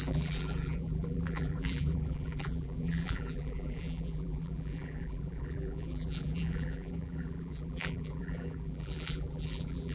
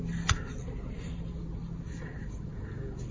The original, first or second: second